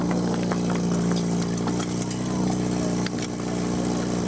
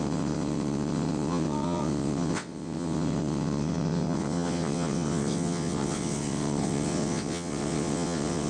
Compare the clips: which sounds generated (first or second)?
second